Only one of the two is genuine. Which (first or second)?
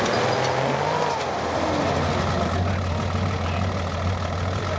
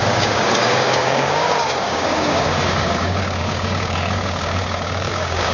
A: first